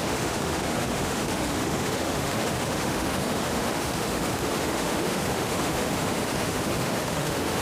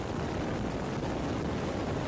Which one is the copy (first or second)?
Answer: first